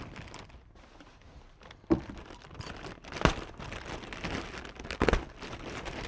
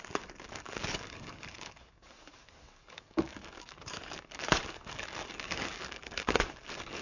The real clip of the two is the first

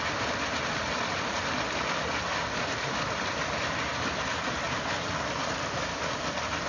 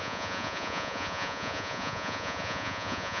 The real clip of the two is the first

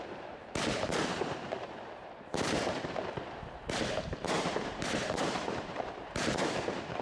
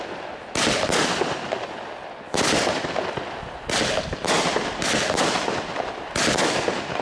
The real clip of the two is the second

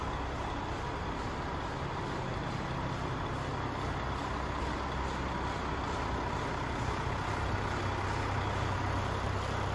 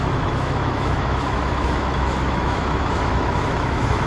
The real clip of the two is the first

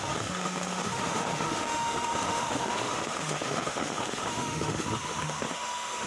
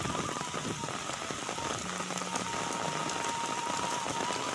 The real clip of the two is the second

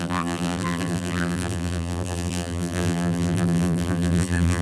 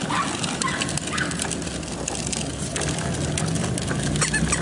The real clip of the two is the second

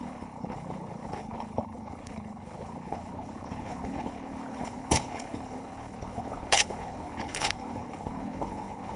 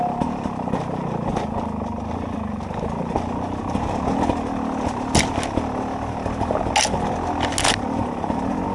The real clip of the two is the second